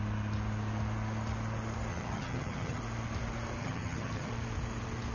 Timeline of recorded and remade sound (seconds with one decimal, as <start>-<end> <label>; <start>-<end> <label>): 0.0-1.9 recorded; 1.9-2.8 remade; 2.8-3.6 recorded; 3.6-4.3 remade; 4.3-5.1 recorded